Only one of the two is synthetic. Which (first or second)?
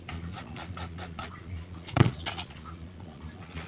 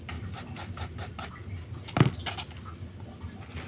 first